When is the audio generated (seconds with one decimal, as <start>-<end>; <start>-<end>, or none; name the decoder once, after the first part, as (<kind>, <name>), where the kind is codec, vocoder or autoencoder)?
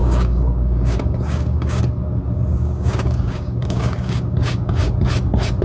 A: 0.0-1.8 (codec, DAC); 2.5-4.9